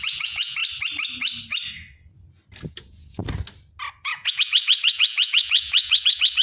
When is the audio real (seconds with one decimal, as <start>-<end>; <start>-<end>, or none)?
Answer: 0.6-2.7; 3.2-4.0